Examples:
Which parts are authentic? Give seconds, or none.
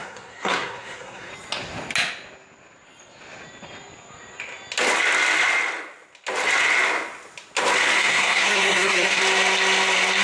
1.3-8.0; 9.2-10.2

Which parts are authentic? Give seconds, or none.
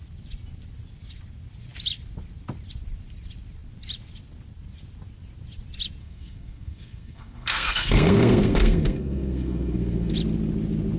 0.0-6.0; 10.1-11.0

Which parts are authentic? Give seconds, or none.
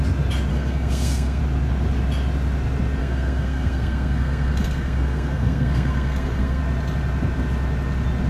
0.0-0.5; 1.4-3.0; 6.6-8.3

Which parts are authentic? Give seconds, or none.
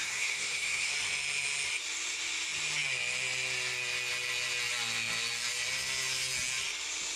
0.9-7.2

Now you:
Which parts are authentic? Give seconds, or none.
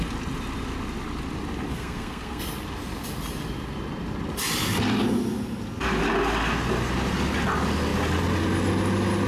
0.0-1.7; 2.4-9.3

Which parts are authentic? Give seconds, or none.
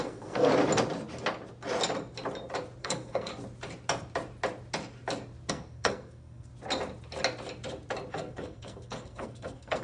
0.5-2.8; 3.3-5.5; 6.5-8.1